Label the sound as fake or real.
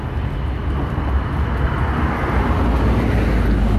real